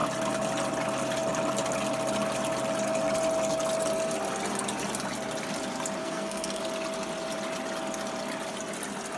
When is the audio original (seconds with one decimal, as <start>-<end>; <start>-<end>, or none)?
0.0-6.0; 6.6-9.2